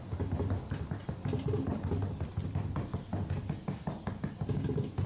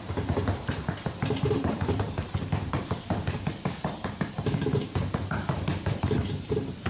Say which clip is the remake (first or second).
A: second